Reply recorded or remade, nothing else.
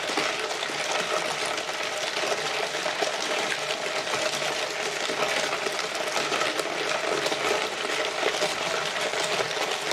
recorded